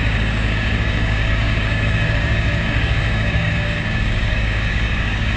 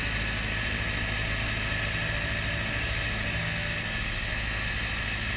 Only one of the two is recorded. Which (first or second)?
second